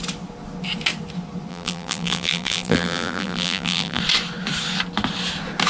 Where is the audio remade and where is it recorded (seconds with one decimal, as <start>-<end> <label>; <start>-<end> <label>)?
0.0-1.5 recorded; 1.5-4.0 remade; 4.0-5.7 recorded